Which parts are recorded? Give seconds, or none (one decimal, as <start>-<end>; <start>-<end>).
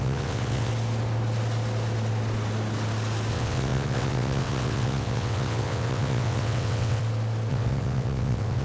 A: 0.7-3.3; 7.0-7.5